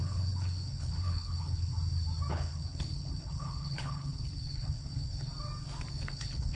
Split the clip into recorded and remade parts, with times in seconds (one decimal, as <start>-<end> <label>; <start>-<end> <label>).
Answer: 0.0-1.7 remade; 1.7-2.3 recorded; 2.3-5.3 remade; 5.3-5.9 recorded; 5.9-6.5 remade